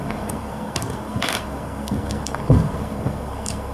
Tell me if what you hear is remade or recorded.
remade